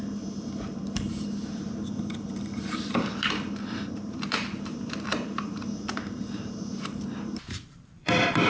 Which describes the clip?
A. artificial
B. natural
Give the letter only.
A